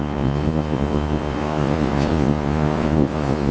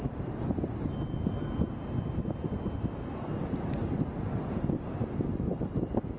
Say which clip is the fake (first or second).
first